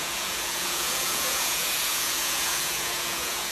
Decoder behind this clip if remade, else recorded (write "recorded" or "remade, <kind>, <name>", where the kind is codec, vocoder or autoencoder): remade, vocoder, Vocos